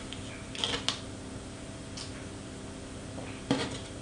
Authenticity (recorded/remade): recorded